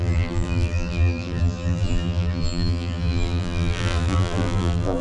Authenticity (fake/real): fake